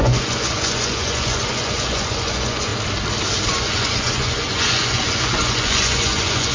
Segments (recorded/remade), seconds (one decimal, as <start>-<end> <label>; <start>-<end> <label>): 0.0-2.7 remade; 2.7-3.5 recorded; 3.5-6.5 remade